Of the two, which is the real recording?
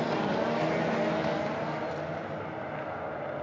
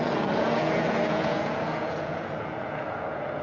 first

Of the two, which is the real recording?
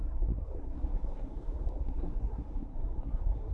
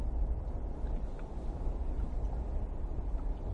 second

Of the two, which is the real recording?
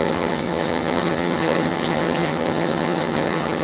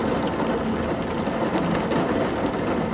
second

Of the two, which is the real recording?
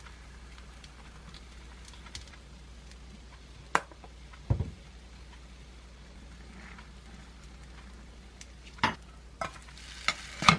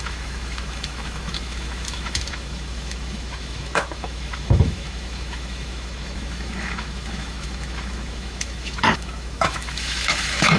first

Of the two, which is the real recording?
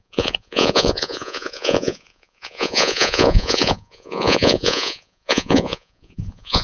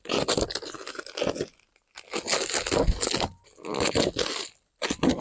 second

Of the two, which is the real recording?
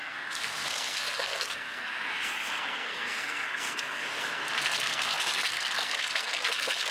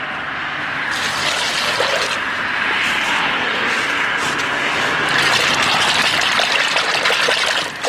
second